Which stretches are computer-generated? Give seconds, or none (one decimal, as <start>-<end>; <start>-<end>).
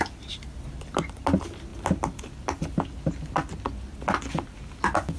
none